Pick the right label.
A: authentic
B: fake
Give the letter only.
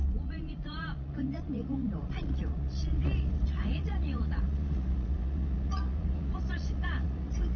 B